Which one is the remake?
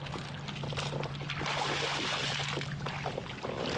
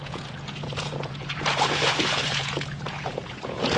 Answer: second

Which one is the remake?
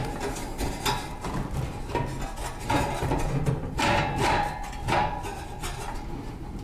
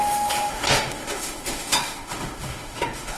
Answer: second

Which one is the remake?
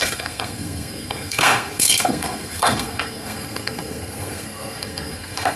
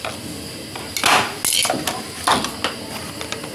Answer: first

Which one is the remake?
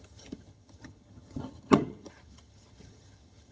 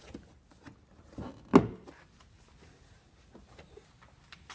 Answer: first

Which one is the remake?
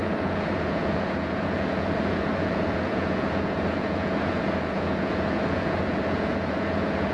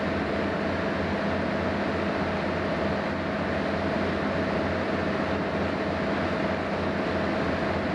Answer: first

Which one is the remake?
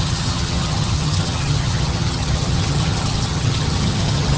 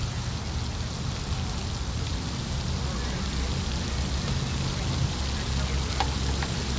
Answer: first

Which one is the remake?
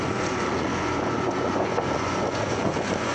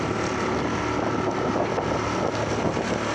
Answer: first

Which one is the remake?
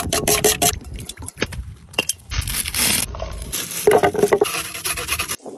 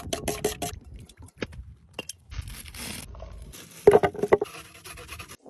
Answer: first